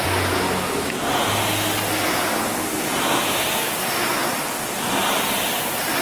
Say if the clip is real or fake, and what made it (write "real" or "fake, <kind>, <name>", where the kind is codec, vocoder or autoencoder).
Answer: real